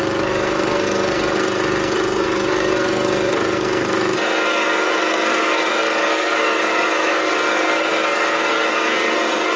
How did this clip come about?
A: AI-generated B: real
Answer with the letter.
A